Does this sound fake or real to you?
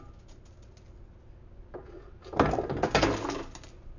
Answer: real